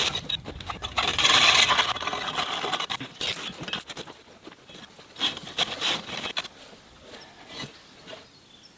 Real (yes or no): yes